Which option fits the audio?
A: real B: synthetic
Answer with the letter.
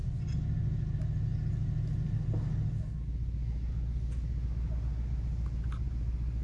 A